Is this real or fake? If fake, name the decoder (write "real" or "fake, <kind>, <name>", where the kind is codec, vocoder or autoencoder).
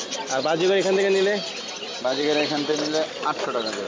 real